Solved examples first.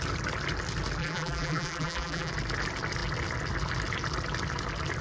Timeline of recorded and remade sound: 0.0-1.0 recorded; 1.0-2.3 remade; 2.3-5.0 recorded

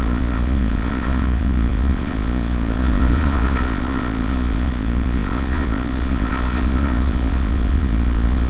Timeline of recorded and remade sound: 0.0-8.5 remade

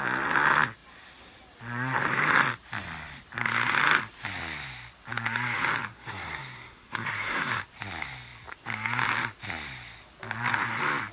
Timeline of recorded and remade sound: 0.0-5.9 recorded; 5.9-7.6 remade; 7.6-11.1 recorded

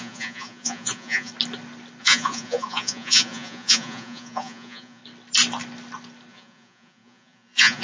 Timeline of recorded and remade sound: 0.0-1.3 remade; 1.3-2.0 recorded; 2.0-5.0 remade; 5.0-6.3 recorded; 6.3-7.8 remade

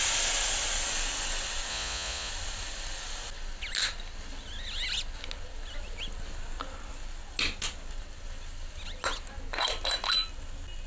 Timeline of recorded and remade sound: 0.0-1.7 recorded; 1.7-2.3 remade; 2.3-10.9 recorded

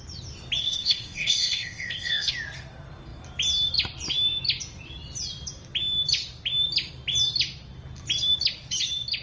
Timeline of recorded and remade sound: 0.0-0.6 recorded; 0.6-2.3 remade; 2.3-9.2 recorded

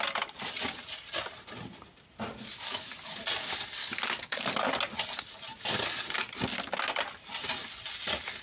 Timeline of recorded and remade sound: 0.0-2.3 recorded; 2.3-3.2 remade; 3.2-3.8 recorded; 3.8-4.7 remade; 4.7-8.4 recorded

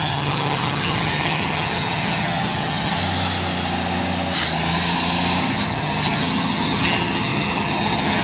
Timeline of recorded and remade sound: 0.0-3.0 remade; 3.0-5.4 recorded; 5.4-8.2 remade